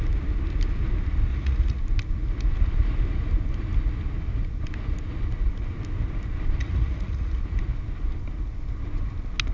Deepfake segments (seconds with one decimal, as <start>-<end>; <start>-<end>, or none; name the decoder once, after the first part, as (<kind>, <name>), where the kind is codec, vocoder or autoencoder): 1.3-1.8 (vocoder, Vocos); 6.6-7.4